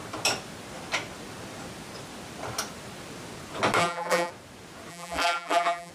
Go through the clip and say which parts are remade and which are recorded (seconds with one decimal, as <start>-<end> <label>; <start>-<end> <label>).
0.0-3.8 recorded; 3.8-4.3 remade; 4.3-4.9 recorded; 4.9-5.9 remade